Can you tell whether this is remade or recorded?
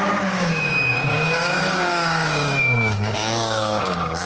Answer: remade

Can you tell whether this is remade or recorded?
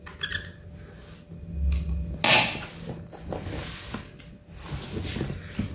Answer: recorded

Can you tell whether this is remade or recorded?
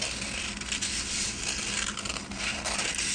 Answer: recorded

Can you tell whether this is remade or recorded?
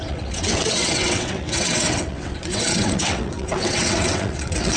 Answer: remade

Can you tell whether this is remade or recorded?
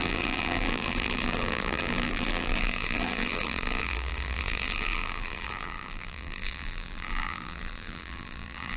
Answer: remade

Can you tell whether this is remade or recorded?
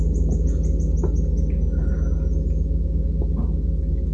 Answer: recorded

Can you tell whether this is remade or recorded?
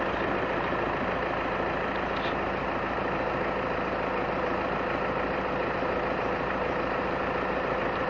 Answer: recorded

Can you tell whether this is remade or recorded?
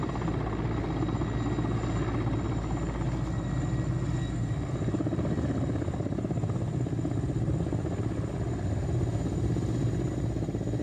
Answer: recorded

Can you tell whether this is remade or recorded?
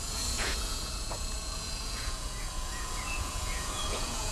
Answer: remade